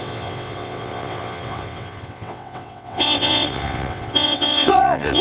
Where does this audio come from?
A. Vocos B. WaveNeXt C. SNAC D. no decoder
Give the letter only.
B